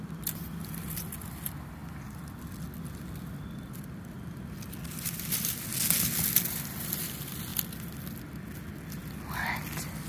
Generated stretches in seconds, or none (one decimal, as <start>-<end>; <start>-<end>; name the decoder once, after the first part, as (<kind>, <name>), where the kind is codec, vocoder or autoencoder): none